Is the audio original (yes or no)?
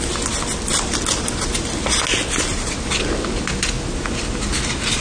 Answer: yes